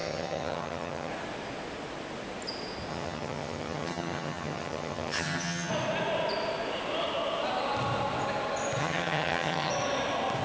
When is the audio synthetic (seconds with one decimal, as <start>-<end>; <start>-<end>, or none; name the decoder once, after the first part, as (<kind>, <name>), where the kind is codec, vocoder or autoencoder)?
0.0-1.1 (vocoder, HiFi-GAN); 2.9-5.7; 8.8-9.7